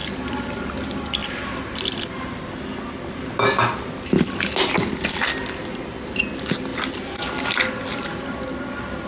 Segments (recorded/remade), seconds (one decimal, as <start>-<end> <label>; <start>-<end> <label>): 0.0-0.6 remade; 0.6-9.1 recorded